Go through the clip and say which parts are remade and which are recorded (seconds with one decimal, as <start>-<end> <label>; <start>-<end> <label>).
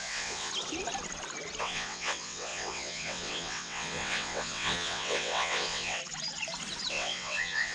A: 0.0-0.5 remade; 0.5-1.6 recorded; 1.6-6.0 remade; 6.0-6.9 recorded; 6.9-7.7 remade